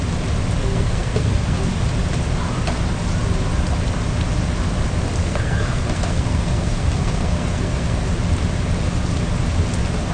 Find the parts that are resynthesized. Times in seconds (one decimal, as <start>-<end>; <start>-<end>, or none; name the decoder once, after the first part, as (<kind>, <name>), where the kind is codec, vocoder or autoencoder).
0.6-1.7 (codec, SNAC); 5.2-8.0

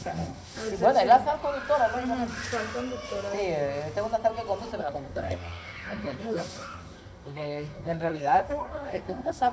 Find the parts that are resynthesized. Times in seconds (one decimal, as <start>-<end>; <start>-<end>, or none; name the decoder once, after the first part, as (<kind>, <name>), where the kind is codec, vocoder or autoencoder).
0.0-0.7 (codec, SNAC); 4.8-9.5

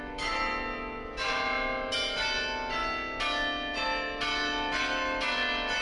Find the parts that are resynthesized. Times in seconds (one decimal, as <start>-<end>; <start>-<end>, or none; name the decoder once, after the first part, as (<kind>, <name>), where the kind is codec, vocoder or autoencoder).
none

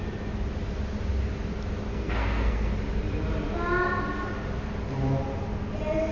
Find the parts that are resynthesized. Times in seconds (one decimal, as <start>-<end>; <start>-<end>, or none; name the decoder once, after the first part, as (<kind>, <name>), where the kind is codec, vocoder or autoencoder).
1.9-2.7 (codec, SNAC)